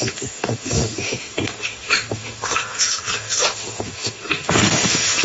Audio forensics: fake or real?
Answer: fake